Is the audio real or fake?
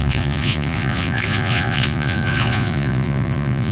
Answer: fake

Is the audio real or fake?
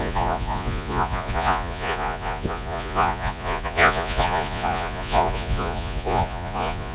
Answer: fake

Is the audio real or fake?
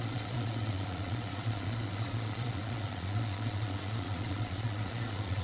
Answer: fake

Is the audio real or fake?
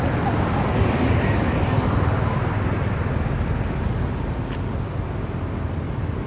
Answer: real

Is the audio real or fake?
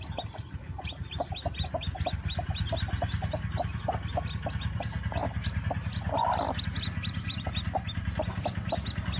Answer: real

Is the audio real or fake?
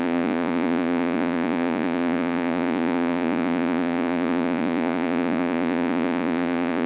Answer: fake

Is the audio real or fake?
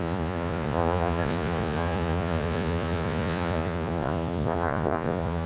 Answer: fake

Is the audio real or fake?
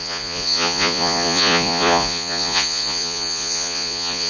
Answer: fake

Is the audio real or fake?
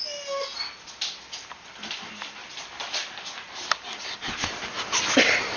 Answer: real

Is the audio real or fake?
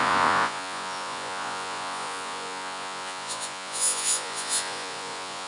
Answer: fake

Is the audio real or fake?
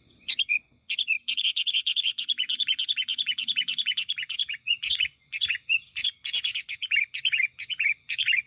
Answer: fake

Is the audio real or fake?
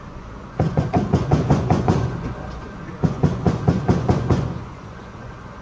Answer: fake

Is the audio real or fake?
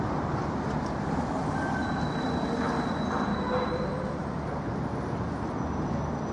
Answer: real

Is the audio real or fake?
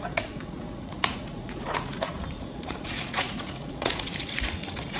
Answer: fake